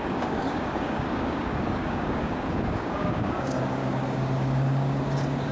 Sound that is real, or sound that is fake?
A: fake